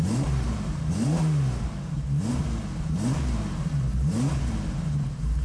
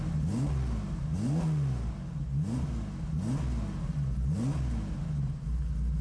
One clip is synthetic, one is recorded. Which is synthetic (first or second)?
first